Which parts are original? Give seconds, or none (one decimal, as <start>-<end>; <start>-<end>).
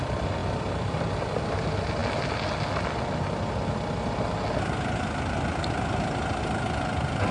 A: 0.0-0.4; 1.4-7.3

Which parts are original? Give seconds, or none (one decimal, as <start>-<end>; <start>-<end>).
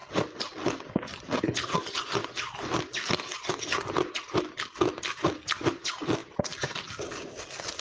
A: 1.4-2.2; 3.3-7.8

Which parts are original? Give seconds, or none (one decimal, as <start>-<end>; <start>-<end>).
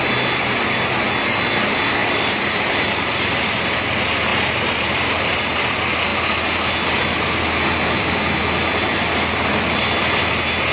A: 0.0-2.0; 3.5-4.3; 5.4-10.7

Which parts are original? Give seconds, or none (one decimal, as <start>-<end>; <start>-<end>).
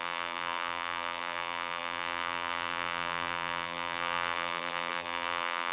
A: none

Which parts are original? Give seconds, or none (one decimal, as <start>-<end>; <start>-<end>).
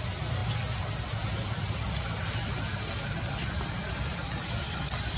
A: 0.0-5.2